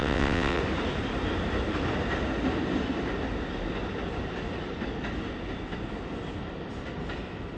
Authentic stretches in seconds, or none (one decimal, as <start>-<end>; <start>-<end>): 0.6-7.6